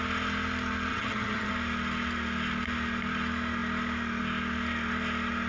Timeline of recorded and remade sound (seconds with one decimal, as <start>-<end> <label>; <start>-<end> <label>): 0.0-0.9 recorded; 0.9-1.5 remade; 1.5-5.5 recorded